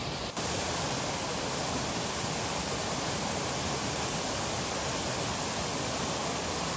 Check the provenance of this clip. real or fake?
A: real